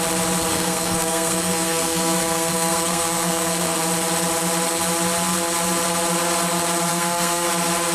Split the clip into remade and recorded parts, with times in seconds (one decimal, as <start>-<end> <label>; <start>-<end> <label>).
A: 0.0-0.5 recorded; 0.5-3.8 remade; 3.8-6.9 recorded; 6.9-7.5 remade; 7.5-7.9 recorded